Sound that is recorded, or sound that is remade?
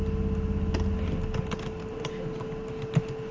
recorded